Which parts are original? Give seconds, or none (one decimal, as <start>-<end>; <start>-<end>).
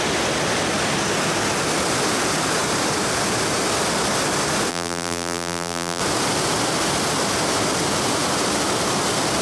0.0-4.7; 6.0-9.4